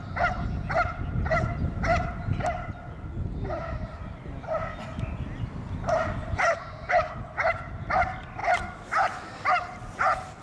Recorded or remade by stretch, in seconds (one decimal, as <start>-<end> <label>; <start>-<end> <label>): 0.0-10.4 recorded

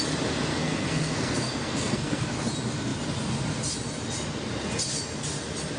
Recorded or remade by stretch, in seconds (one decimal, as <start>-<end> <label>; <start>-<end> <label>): 0.0-0.5 recorded; 0.5-2.3 remade; 2.3-5.8 recorded

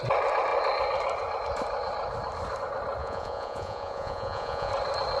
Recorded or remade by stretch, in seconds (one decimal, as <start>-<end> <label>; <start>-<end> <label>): 0.0-3.0 recorded; 3.0-4.7 remade; 4.7-5.2 recorded

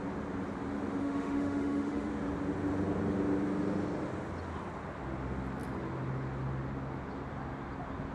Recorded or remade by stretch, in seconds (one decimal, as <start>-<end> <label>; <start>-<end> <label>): 0.0-1.0 recorded; 1.0-2.1 remade; 2.1-8.1 recorded